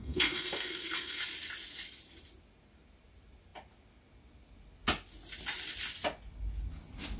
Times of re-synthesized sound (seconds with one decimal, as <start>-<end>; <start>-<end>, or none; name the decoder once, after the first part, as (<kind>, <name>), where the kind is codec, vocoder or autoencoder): 0.0-1.2 (codec, SNAC)